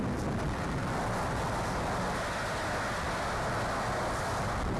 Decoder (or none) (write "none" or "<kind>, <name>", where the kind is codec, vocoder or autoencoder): none